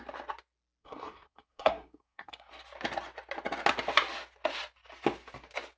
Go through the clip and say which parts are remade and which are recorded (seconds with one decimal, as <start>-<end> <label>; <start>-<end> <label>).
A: 0.0-0.8 recorded; 0.8-2.5 remade; 2.5-5.8 recorded